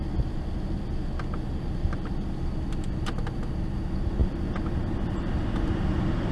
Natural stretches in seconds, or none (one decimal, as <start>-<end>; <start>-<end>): 0.0-4.2